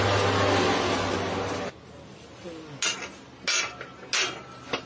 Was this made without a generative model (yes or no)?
yes